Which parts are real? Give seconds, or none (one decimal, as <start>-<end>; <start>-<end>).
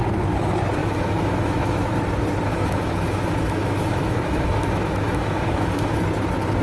0.0-0.8; 1.8-2.5; 6.0-6.6